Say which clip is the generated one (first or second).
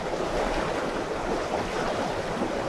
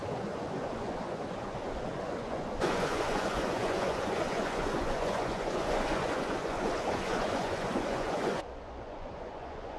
second